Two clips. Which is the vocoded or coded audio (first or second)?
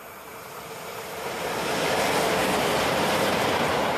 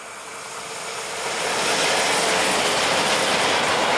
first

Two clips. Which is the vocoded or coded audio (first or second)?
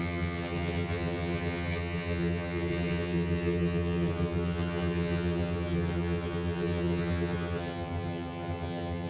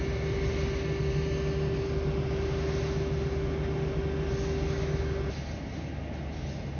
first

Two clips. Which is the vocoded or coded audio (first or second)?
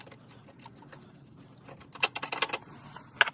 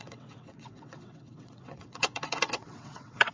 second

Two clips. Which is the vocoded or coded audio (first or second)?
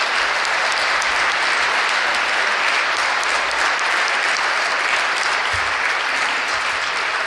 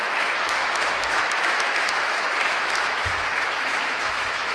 second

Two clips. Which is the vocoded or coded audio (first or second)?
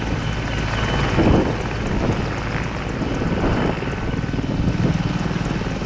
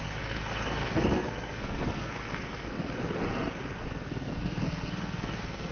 second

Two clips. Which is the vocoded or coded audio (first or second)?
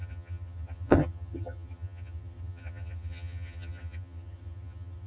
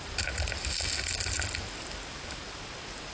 first